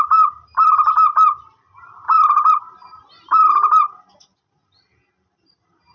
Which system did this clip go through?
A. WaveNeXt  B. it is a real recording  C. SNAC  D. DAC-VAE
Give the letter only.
B